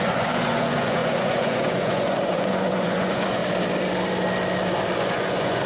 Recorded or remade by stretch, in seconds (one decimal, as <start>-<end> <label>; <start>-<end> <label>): 0.0-3.4 remade; 3.4-5.0 recorded; 5.0-5.7 remade

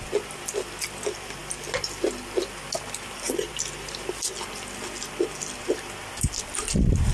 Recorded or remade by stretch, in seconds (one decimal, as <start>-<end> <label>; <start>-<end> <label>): 0.0-7.1 recorded

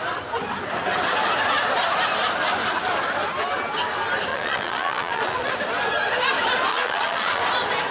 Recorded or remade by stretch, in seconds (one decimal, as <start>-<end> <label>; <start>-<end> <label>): 0.0-4.3 recorded; 4.3-5.5 remade; 5.5-6.7 recorded; 6.7-7.4 remade; 7.4-7.9 recorded

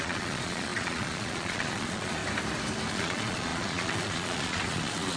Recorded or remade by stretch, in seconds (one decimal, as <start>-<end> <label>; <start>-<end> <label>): 0.0-2.2 remade; 2.2-2.9 recorded; 2.9-5.2 remade

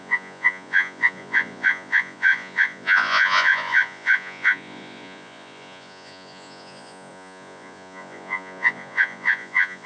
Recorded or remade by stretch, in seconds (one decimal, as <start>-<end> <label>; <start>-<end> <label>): 0.0-9.9 remade

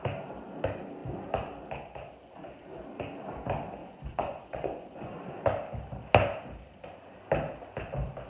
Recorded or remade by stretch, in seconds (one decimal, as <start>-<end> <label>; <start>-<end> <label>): 0.0-3.8 recorded; 3.8-5.4 remade; 5.4-8.3 recorded

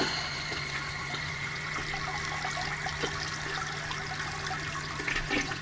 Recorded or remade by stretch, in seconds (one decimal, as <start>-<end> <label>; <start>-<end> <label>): 0.0-1.8 remade; 1.8-5.0 recorded; 5.0-5.6 remade